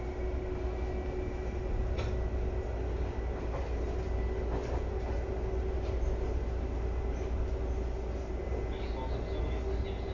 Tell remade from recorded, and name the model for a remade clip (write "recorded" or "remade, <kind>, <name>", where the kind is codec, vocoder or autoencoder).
recorded